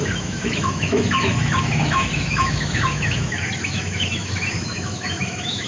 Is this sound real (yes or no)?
no